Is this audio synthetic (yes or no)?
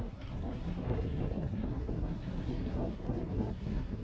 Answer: yes